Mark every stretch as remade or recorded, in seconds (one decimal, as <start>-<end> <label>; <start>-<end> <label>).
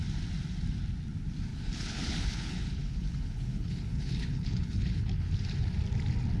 0.0-1.5 recorded; 1.5-5.3 remade; 5.3-6.4 recorded